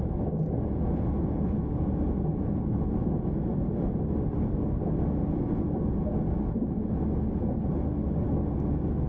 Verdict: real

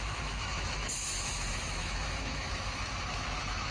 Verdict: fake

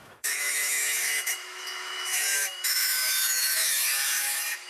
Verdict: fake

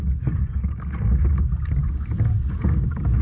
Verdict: real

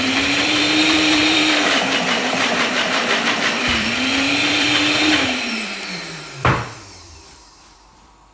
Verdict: fake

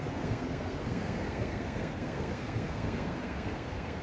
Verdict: fake